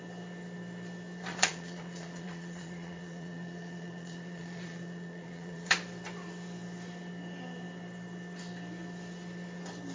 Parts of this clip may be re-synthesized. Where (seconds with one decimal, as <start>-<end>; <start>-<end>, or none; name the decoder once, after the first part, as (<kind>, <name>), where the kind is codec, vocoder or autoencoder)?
1.3-5.7 (vocoder, Vocos)